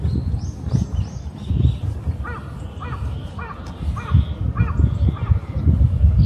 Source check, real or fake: real